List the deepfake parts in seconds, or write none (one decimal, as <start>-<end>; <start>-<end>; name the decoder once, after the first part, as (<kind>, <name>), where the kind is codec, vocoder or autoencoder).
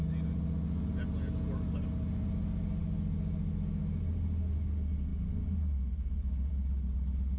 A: none